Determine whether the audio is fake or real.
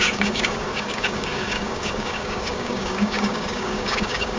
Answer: fake